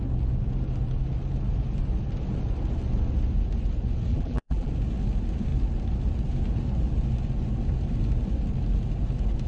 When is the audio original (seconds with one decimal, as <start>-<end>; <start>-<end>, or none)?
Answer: 0.0-4.1; 4.7-9.5